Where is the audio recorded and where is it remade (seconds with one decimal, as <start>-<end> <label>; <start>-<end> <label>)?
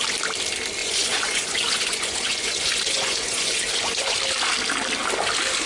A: 0.0-0.8 recorded; 0.8-4.2 remade; 4.2-5.7 recorded